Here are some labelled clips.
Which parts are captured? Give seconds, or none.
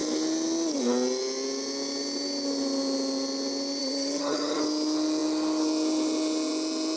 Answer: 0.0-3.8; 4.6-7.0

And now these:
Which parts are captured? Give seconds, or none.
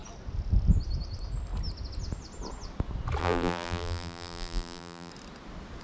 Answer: 0.0-3.2; 5.1-5.8